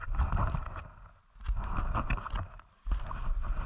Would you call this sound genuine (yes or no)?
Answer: yes